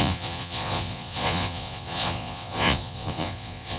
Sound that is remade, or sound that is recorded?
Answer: remade